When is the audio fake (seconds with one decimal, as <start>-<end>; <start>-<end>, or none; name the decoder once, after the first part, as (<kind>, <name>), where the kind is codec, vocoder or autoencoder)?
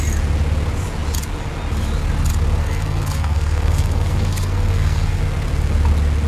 2.6-5.2 (codec, SNAC)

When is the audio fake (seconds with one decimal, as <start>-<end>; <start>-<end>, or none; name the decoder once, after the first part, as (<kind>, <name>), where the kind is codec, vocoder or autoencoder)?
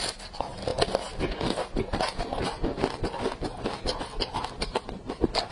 none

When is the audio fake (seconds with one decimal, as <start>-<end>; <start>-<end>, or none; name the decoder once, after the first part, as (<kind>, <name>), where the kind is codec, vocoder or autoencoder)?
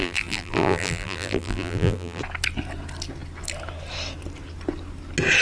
0.0-2.2 (vocoder, BigVGAN v2)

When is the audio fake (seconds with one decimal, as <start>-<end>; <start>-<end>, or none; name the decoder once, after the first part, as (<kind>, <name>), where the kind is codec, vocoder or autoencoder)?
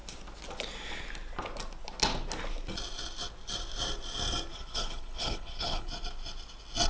4.5-5.9 (codec, HILCodec)